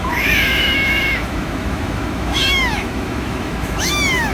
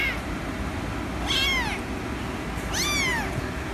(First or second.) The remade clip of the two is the first